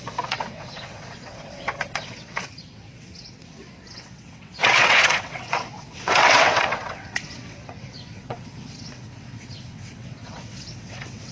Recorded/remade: remade